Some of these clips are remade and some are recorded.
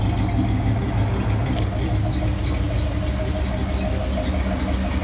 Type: recorded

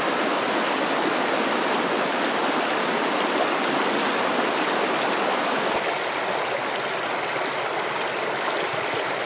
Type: recorded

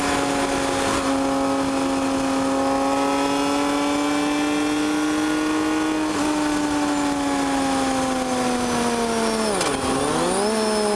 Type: recorded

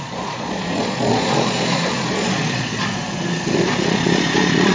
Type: remade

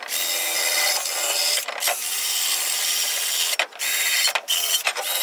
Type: recorded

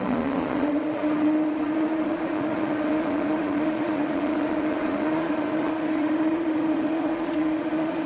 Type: remade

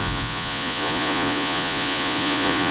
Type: remade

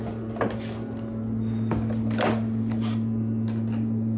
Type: recorded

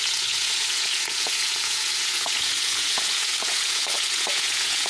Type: remade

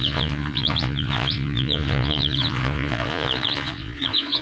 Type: remade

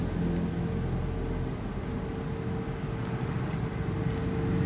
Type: recorded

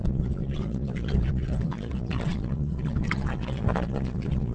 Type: remade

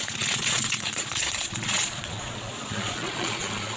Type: remade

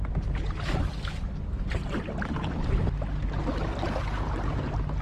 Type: recorded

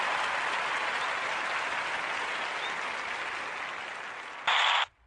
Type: recorded